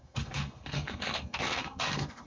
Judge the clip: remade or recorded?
remade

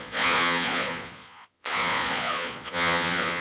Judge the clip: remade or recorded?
remade